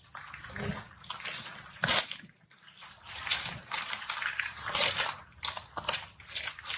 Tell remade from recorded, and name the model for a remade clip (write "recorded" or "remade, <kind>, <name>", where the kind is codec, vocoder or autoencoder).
recorded